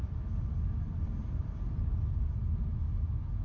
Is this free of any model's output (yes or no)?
yes